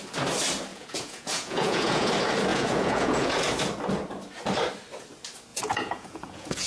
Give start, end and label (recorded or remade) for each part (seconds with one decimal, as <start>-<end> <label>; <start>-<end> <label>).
0.0-0.7 recorded; 0.7-2.1 remade; 2.1-2.5 recorded; 2.5-3.4 remade; 3.4-5.5 recorded; 5.5-6.7 remade